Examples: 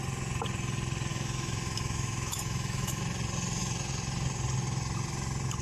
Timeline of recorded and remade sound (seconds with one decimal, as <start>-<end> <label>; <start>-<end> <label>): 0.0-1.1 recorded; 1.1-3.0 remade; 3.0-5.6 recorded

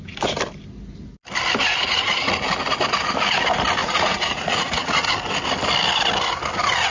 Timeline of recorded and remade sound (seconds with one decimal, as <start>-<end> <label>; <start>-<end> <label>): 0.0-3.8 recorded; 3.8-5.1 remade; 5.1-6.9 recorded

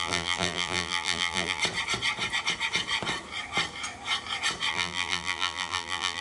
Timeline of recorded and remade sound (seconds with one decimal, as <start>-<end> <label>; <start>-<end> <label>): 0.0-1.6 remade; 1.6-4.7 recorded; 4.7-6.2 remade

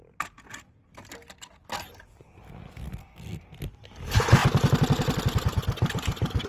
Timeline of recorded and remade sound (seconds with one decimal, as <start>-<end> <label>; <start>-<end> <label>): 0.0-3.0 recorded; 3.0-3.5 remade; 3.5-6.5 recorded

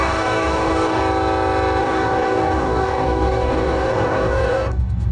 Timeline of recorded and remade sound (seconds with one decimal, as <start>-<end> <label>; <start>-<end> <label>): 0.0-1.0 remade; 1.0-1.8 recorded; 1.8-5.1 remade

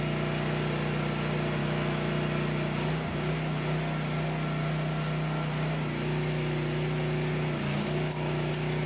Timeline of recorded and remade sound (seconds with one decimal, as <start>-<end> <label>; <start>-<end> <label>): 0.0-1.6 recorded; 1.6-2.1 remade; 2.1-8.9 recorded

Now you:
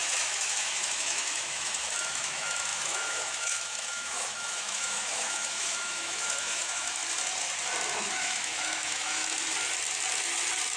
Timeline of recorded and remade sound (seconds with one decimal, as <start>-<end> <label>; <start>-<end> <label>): 0.0-7.0 remade; 7.0-8.0 recorded; 8.0-9.2 remade; 9.2-10.8 recorded

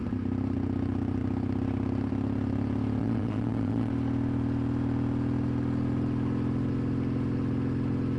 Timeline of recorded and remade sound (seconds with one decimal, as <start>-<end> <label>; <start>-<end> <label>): 0.0-3.0 recorded; 3.0-3.9 remade; 3.9-8.2 recorded